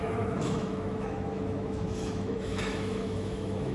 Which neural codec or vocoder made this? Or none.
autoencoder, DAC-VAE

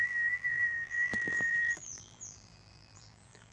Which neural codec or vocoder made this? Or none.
vocoder, BigVGAN v2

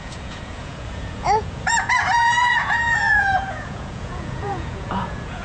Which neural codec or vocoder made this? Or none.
vocoder, Vocos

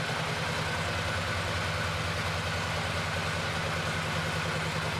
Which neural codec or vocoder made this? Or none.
none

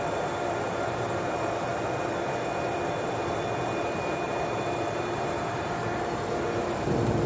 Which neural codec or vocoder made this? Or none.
vocoder, BigVGAN v2